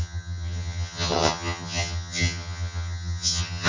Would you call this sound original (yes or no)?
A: no